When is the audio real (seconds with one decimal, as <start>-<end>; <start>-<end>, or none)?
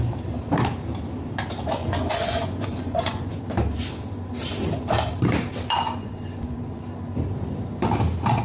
0.0-1.8; 3.4-6.0; 6.8-8.4